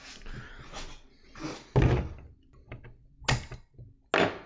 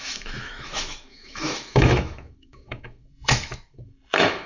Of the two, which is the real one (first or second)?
first